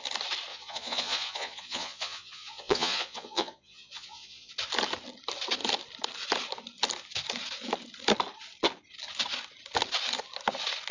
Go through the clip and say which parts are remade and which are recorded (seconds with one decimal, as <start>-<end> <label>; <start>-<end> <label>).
0.0-0.5 recorded; 0.5-4.5 remade; 4.5-10.9 recorded